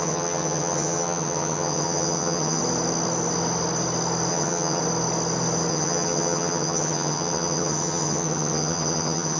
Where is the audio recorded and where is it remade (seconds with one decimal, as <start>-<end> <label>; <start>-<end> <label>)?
0.0-2.6 remade; 2.6-4.3 recorded; 4.3-4.8 remade; 4.8-5.7 recorded; 5.7-9.4 remade